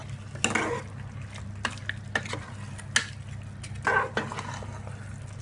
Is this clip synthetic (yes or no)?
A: no